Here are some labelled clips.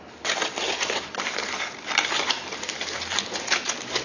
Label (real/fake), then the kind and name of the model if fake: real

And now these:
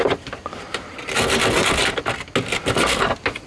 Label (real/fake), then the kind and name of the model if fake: real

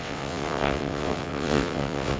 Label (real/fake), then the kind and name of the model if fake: fake, vocoder, WaveNeXt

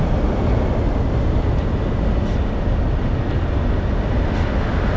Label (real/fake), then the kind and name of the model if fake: real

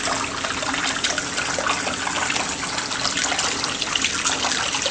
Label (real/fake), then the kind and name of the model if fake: real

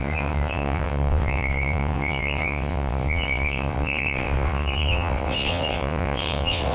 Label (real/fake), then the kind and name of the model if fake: fake, vocoder, WaveNeXt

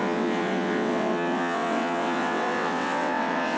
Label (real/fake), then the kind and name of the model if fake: fake, vocoder, WaveNeXt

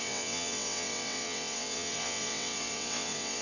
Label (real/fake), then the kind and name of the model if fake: fake, vocoder, WaveNeXt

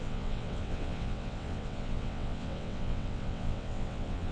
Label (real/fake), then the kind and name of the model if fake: fake, vocoder, WaveNeXt